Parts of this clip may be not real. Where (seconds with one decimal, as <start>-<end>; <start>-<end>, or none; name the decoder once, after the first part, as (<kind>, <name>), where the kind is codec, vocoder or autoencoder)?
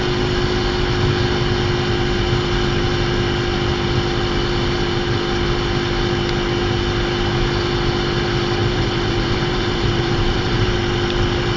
8.6-10.8 (vocoder, BigVGAN v2)